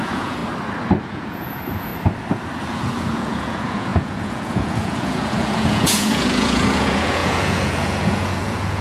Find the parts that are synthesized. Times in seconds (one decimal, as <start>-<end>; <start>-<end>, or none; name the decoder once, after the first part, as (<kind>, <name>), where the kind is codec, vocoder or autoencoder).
0.0-0.4 (vocoder, Vocos); 1.0-1.9; 2.6-8.8